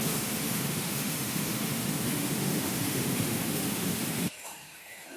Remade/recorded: remade